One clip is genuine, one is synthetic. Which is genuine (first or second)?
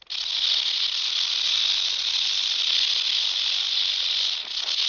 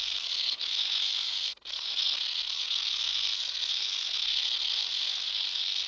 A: first